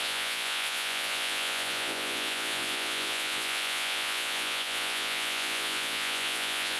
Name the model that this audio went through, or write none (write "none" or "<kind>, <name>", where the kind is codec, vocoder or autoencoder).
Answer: vocoder, Vocos